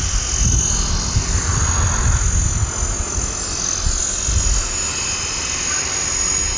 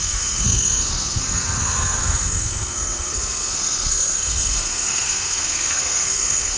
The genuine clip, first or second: first